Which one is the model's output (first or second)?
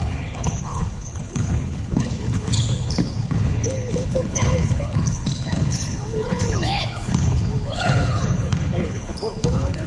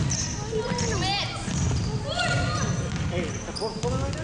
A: first